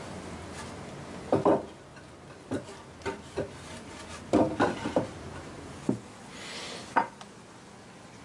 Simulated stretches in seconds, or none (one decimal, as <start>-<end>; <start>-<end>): none